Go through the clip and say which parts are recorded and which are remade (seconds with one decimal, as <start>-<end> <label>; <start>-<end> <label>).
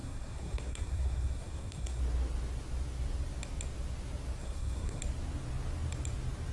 0.0-2.0 remade; 2.0-4.4 recorded; 4.4-5.0 remade; 5.0-6.5 recorded